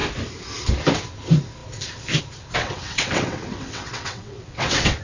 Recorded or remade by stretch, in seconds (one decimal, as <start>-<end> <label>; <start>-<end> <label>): 0.0-2.6 recorded; 2.6-5.0 remade